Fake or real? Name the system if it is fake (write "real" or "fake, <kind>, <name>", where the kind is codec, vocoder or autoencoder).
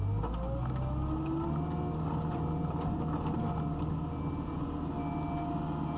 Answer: real